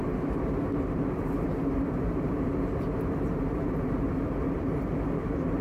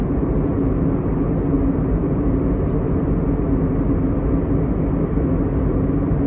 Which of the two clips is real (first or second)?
second